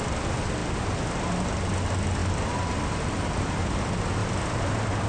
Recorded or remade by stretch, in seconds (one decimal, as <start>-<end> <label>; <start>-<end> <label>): 0.0-5.1 recorded